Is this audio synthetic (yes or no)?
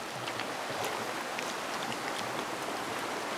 no